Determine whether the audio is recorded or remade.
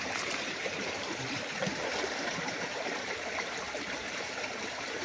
remade